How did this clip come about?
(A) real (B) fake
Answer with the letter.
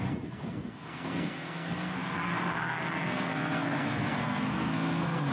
B